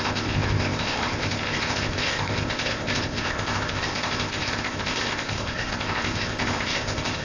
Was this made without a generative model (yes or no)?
no